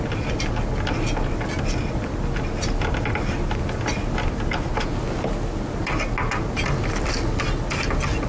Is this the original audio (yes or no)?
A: yes